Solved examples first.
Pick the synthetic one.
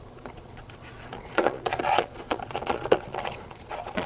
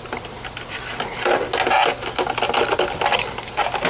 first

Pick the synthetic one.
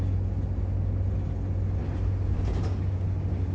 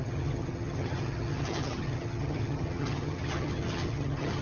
second